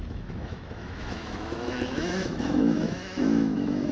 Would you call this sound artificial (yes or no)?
yes